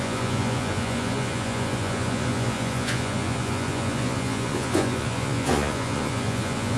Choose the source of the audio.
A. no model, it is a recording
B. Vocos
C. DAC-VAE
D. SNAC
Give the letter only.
B